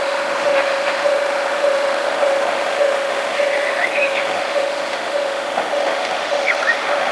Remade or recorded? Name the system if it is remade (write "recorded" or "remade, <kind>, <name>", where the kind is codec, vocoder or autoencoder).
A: remade, autoencoder, DAC-VAE